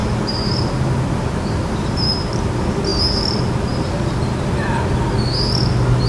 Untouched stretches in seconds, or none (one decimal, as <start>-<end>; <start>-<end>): 2.4-6.1